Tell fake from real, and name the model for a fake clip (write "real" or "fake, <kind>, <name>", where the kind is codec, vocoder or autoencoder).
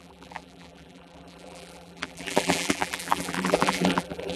fake, vocoder, BigVGAN v2